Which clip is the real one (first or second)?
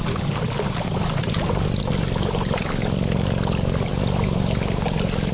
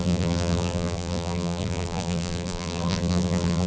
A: first